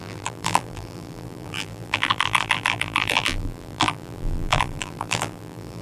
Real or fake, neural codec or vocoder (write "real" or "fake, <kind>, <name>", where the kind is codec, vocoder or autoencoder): fake, vocoder, BigVGAN v2